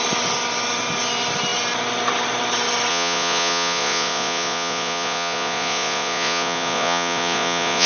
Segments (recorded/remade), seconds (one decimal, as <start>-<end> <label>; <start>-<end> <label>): 0.0-2.9 recorded; 2.9-7.9 remade